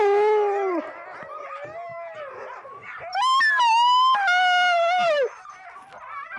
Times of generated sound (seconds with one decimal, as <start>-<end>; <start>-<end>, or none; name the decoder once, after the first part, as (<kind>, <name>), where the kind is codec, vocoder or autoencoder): none